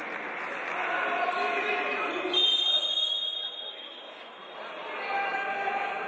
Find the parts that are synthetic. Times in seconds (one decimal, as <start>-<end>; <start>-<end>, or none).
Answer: 3.7-4.4; 5.3-6.1